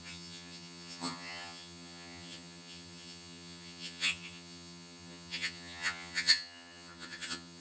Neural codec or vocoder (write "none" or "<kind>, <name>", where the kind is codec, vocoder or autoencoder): vocoder, HiFi-GAN